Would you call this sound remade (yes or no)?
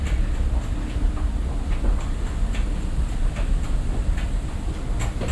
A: no